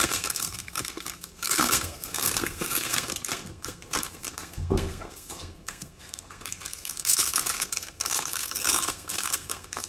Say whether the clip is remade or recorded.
remade